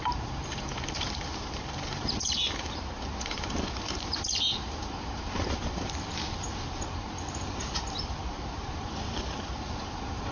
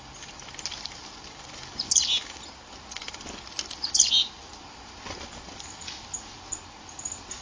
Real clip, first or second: second